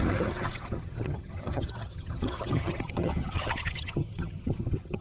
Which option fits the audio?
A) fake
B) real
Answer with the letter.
A